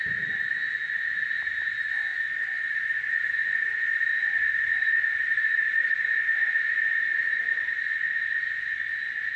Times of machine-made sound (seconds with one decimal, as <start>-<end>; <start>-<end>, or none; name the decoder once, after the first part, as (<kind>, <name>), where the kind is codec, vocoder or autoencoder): 2.1-6.8 (vocoder, Vocos); 7.5-8.9